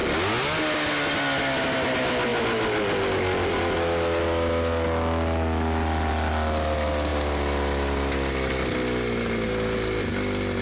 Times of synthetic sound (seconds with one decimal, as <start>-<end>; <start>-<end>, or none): none